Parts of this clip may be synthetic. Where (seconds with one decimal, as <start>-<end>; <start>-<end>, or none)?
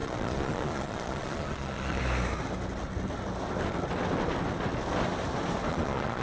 0.0-2.0; 5.7-6.2